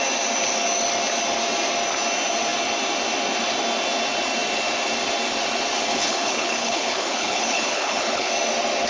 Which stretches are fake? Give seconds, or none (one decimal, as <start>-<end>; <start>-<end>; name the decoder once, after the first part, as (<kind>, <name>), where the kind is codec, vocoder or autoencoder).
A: 5.9-8.3 (codec, HILCodec)

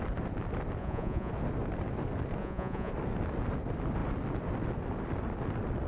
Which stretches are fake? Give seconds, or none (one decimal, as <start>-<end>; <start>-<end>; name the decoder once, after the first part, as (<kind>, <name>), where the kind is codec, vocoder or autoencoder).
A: 0.8-1.3 (vocoder, Vocos); 2.4-2.9

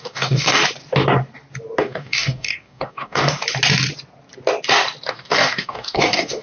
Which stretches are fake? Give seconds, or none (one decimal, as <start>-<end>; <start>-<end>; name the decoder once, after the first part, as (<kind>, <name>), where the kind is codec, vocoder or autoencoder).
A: 0.0-0.6 (codec, DAC); 1.8-3.2; 5.1-6.4